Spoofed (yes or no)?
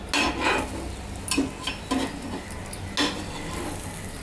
no